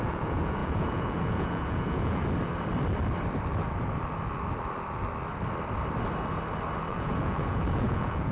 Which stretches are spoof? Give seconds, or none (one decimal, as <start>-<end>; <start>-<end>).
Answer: 0.0-2.2; 6.9-8.3